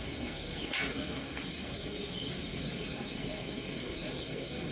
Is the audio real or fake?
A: fake